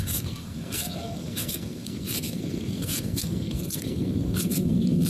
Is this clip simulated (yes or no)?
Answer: yes